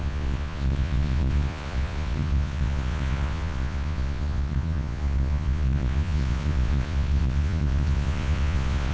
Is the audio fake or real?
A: fake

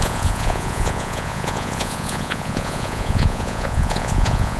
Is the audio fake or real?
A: fake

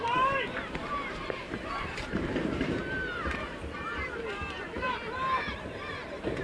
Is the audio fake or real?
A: fake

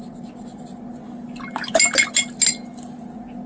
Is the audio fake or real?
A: real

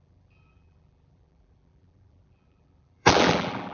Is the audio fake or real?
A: fake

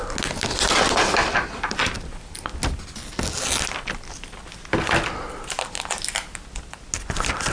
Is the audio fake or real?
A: real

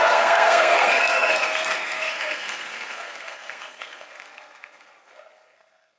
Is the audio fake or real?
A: fake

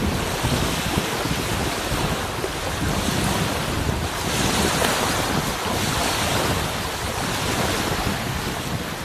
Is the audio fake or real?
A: real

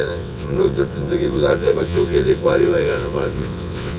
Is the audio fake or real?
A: fake